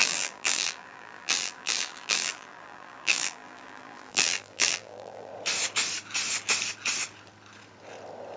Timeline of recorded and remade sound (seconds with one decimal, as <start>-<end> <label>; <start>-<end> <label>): 0.0-5.3 remade; 5.3-8.4 recorded

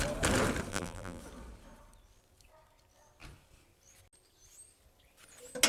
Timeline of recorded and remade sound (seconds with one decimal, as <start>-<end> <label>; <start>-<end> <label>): 0.0-0.7 recorded; 0.7-1.2 remade; 1.2-5.7 recorded

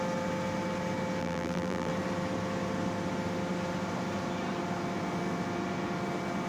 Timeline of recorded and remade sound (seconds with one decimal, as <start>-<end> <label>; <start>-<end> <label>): 0.0-1.2 recorded; 1.2-1.9 remade; 1.9-6.5 recorded